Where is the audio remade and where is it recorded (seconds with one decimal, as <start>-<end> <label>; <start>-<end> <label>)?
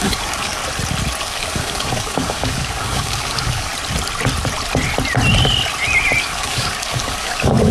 0.0-0.6 remade; 0.6-1.2 recorded; 1.2-3.7 remade; 3.7-6.2 recorded; 6.2-7.7 remade